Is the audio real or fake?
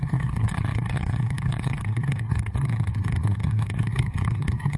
fake